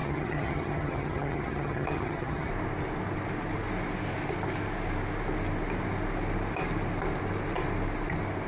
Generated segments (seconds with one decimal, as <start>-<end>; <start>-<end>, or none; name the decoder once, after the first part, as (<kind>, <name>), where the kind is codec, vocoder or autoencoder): 0.0-2.5 (vocoder, HiFi-GAN)

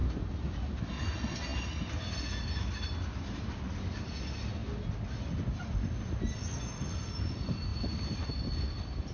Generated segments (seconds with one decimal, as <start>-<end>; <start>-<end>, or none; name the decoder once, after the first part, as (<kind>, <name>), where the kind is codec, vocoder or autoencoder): none

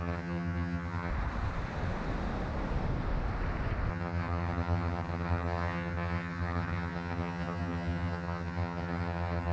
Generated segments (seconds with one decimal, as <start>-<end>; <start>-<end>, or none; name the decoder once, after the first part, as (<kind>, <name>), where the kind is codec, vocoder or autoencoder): 0.0-1.1 (vocoder, HiFi-GAN); 3.9-9.5

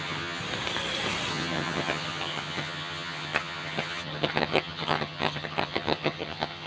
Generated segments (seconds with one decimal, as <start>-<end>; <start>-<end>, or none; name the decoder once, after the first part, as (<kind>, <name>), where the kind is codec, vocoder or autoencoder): 0.0-0.4 (vocoder, HiFi-GAN); 1.3-6.7